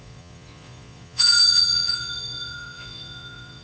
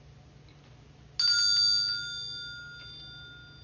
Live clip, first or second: second